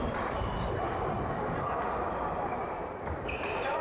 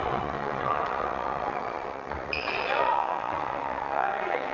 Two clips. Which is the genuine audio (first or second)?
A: first